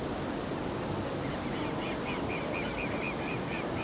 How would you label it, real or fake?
real